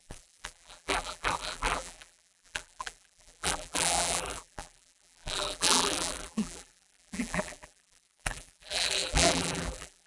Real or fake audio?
fake